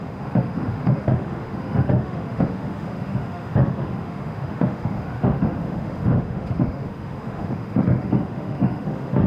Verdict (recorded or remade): remade